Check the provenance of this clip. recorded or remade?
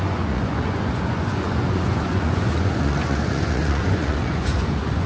remade